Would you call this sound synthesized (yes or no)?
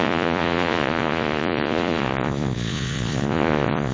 yes